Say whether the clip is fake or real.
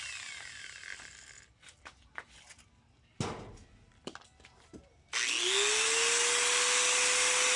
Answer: real